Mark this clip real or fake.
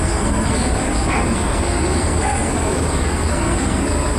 fake